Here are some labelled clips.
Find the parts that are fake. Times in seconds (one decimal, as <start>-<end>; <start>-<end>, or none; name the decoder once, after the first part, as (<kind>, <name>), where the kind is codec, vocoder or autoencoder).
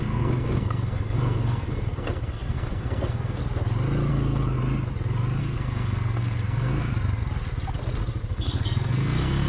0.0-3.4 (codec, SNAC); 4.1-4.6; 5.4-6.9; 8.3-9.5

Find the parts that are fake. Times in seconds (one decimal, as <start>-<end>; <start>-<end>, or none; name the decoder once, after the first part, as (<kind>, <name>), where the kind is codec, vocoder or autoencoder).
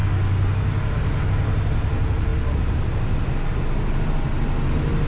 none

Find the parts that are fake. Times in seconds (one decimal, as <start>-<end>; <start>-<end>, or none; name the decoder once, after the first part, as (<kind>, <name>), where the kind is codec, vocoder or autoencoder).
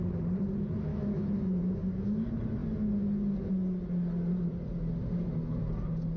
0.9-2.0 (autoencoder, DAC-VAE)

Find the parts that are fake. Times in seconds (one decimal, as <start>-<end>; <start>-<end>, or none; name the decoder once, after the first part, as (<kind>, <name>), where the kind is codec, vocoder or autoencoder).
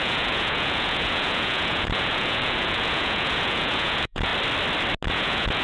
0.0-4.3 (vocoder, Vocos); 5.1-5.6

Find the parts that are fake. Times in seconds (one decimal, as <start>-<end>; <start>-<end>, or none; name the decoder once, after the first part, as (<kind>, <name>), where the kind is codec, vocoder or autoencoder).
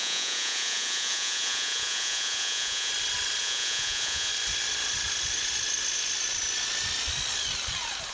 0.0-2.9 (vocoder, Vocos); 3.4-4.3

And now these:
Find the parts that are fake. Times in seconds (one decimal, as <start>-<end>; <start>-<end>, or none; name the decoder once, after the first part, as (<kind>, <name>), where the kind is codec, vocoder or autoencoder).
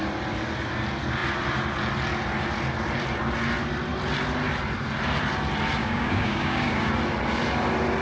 5.8-6.9 (codec, DAC)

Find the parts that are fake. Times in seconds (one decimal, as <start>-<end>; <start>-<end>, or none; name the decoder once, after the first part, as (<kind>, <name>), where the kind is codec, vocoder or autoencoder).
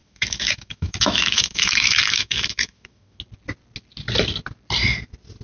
0.0-3.2 (autoencoder, DAC-VAE)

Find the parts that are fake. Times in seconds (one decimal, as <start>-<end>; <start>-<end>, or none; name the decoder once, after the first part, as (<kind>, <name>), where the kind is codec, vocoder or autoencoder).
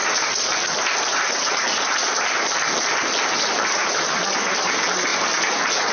3.5-5.1 (vocoder, BigVGAN v2)